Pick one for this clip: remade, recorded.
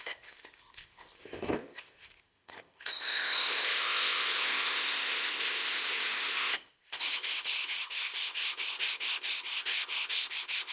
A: remade